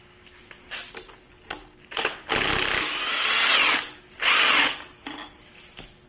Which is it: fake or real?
real